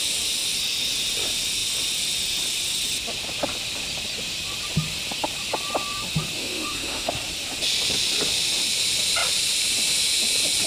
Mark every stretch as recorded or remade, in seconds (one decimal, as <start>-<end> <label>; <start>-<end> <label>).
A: 0.0-6.4 recorded; 6.4-7.1 remade; 7.1-10.7 recorded